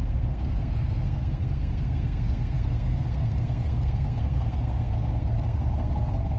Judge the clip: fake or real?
fake